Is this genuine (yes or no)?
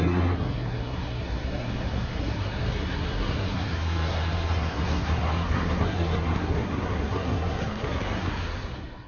no